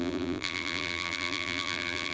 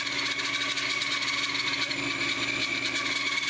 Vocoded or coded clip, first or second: first